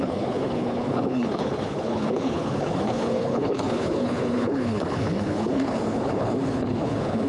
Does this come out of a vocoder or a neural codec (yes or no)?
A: yes